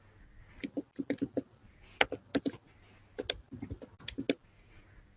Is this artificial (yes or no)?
no